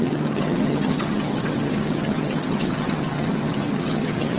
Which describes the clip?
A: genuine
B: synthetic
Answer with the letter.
B